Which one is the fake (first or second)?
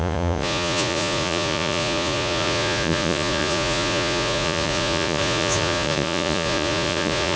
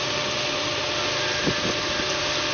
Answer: first